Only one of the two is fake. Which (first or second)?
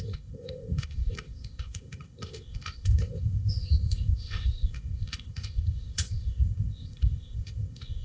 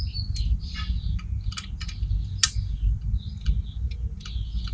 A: first